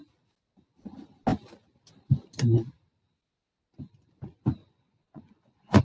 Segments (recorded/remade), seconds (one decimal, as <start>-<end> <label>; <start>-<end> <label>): 0.0-4.6 recorded; 4.6-5.8 remade